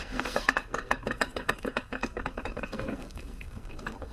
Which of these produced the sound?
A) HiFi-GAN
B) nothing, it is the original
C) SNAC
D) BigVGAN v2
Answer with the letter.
C